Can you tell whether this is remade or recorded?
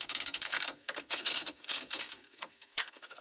remade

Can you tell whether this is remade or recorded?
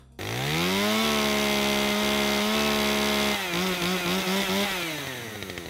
recorded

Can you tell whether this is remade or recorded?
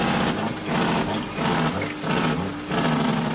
recorded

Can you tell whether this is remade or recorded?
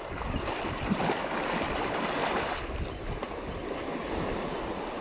recorded